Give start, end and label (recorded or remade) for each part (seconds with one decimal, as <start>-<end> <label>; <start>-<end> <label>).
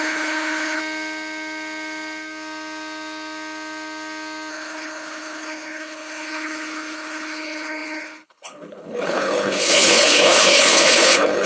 0.0-0.8 remade; 0.8-4.5 recorded; 4.5-11.5 remade